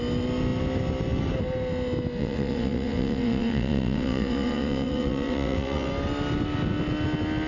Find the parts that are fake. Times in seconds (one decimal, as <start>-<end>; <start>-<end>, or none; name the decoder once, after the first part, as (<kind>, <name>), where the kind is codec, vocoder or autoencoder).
2.2-5.9 (vocoder, WaveNeXt)